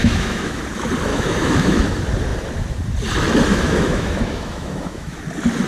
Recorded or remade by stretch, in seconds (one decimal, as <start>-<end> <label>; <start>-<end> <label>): 0.0-0.6 remade; 0.6-1.1 recorded; 1.1-1.9 remade; 1.9-3.5 recorded; 3.5-5.2 remade; 5.2-5.7 recorded